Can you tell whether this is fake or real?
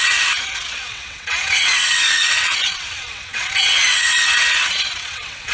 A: fake